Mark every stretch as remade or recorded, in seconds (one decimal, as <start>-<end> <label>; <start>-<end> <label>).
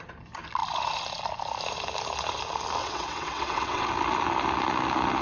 0.0-2.8 recorded; 2.8-3.9 remade; 3.9-5.2 recorded